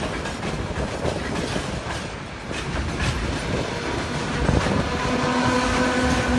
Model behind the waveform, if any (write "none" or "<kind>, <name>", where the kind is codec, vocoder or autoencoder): none